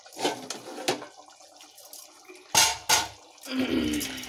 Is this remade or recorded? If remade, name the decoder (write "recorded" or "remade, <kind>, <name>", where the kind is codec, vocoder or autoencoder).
recorded